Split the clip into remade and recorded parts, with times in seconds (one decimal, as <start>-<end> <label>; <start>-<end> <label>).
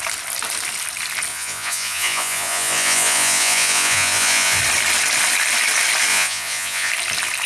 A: 0.0-1.3 recorded; 1.3-4.6 remade; 4.6-6.1 recorded; 6.1-6.9 remade; 6.9-7.5 recorded